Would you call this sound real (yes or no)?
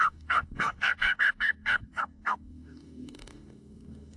no